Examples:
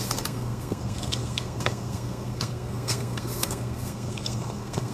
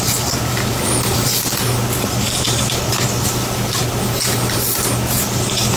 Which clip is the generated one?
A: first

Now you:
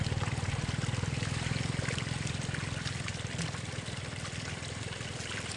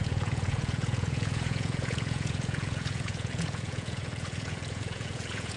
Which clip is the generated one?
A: second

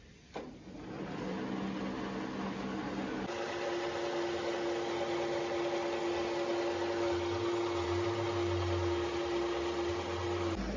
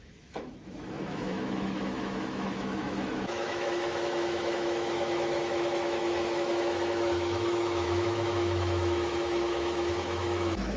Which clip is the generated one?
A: second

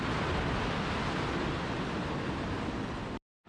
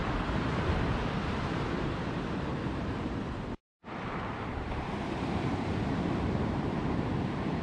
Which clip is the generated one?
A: second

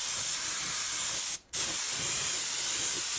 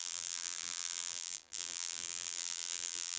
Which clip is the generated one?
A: second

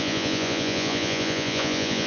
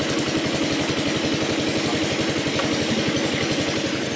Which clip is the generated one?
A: first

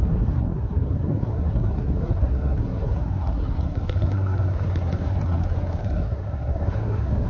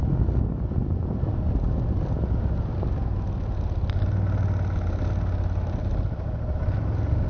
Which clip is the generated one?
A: first